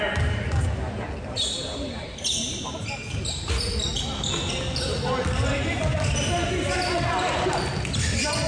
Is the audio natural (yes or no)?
yes